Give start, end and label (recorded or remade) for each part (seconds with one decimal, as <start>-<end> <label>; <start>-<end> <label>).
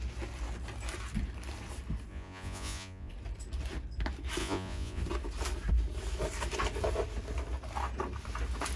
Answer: 0.0-2.1 recorded; 2.1-3.1 remade; 3.1-4.4 recorded; 4.4-5.0 remade; 5.0-8.8 recorded